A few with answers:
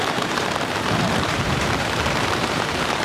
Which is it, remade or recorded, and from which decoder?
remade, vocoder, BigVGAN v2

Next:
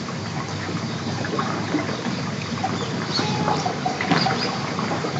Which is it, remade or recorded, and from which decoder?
remade, vocoder, BigVGAN v2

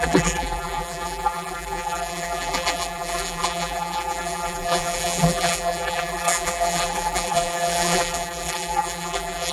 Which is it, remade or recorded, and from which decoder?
remade, vocoder, BigVGAN v2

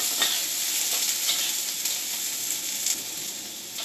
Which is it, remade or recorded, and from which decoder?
recorded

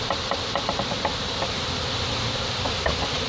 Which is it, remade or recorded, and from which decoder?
remade, vocoder, BigVGAN v2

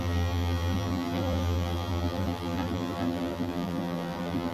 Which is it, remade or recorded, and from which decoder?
remade, vocoder, BigVGAN v2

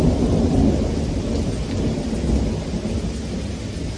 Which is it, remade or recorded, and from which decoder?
recorded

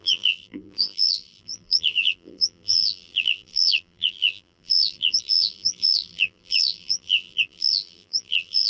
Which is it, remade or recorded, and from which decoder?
remade, vocoder, BigVGAN v2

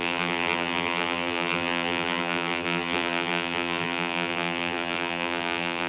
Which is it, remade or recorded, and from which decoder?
remade, vocoder, BigVGAN v2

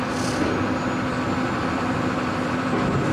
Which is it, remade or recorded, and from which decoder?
recorded